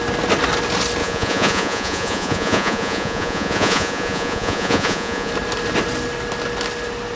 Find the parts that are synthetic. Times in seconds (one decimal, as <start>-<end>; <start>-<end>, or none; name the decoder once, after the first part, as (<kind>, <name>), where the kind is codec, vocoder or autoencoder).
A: 1.0-5.3 (vocoder, Vocos)